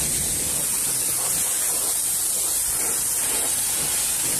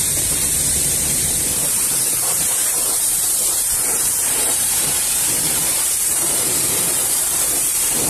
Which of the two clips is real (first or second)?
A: first